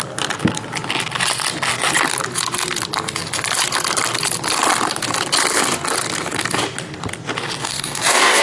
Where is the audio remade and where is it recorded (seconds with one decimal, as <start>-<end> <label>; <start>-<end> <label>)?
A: 0.0-7.6 recorded; 7.6-8.4 remade

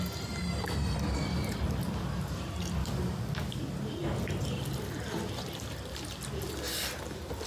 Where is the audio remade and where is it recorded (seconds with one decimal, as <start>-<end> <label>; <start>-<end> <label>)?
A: 0.0-2.8 recorded; 2.8-3.6 remade; 3.6-7.5 recorded

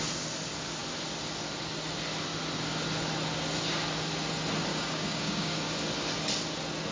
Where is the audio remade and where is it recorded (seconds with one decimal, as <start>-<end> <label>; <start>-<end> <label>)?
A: 0.0-4.7 recorded; 4.7-5.6 remade; 5.6-6.9 recorded

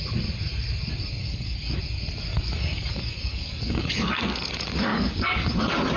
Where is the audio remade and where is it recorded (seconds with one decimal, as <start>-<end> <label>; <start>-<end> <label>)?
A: 0.0-1.2 recorded; 1.2-1.8 remade; 1.8-2.3 recorded; 2.3-4.2 remade; 4.2-4.9 recorded; 4.9-5.6 remade; 5.6-6.0 recorded

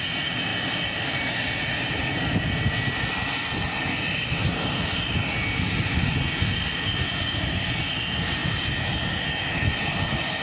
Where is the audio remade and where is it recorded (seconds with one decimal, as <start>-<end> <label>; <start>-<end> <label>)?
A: 0.0-10.4 recorded

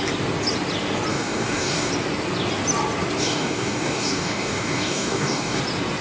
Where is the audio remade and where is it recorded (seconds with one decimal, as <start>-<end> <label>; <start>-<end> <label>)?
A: 0.0-1.1 recorded; 1.1-1.9 remade; 1.9-3.2 recorded; 3.2-5.6 remade; 5.6-6.0 recorded

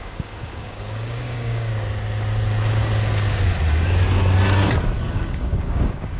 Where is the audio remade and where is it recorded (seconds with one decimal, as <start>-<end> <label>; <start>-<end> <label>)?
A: 0.0-1.7 remade; 1.7-5.1 recorded; 5.1-6.2 remade